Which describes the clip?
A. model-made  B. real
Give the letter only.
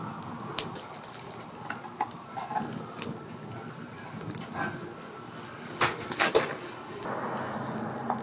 B